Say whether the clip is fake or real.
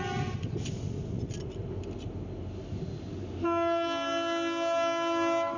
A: real